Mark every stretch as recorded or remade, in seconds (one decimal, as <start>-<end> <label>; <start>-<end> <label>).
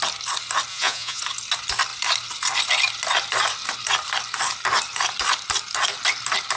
0.0-0.7 recorded; 0.7-1.2 remade; 1.2-6.6 recorded